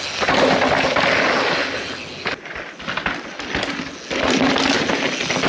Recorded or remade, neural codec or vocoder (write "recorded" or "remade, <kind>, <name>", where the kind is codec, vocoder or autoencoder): recorded